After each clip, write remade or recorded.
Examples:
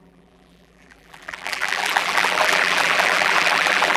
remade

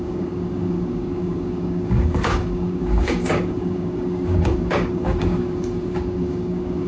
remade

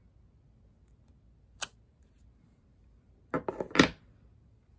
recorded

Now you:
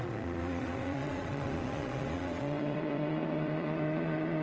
remade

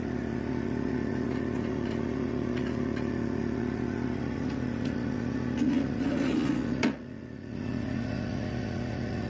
remade